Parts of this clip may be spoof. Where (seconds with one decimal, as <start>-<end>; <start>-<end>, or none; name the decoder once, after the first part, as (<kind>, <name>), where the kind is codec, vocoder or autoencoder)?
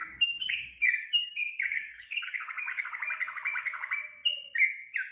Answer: 0.0-3.1 (codec, DAC)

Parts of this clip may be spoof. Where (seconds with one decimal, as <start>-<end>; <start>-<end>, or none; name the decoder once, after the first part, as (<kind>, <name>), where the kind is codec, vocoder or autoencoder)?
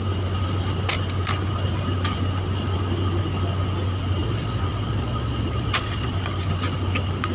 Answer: 4.2-6.1 (vocoder, Vocos)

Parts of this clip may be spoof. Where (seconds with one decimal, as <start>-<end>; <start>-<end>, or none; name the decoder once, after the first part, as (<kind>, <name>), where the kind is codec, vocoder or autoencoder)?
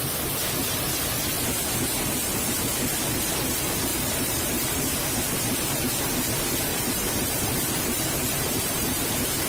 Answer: 3.9-4.8 (vocoder, BigVGAN v2); 6.7-9.1